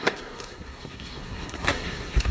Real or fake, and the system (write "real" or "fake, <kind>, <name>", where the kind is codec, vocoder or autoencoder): fake, codec, SNAC